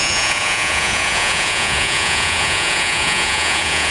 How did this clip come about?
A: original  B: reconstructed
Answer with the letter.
B